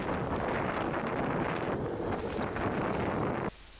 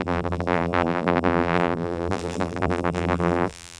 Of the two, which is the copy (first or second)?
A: second